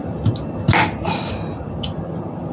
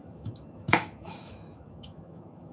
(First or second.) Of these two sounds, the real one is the first